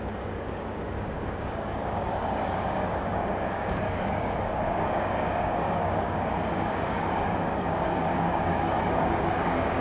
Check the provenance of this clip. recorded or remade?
remade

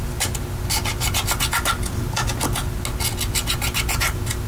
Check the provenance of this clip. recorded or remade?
recorded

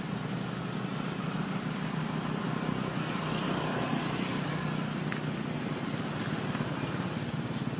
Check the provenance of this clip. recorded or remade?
recorded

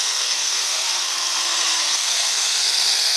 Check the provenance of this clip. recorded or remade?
remade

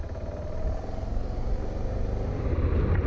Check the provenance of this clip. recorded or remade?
recorded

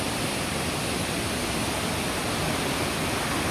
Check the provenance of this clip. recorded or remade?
recorded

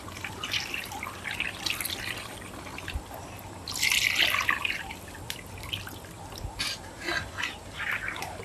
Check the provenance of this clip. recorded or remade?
recorded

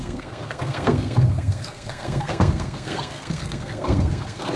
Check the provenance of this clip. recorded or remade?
remade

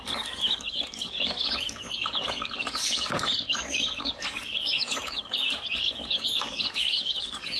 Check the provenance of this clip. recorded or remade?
remade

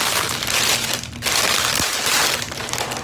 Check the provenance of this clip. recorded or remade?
recorded